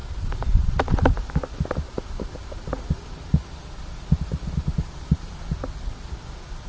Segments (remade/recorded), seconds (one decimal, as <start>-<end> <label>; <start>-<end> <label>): 0.0-6.7 recorded